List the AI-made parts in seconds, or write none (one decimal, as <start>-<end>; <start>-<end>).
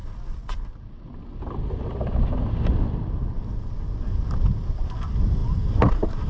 none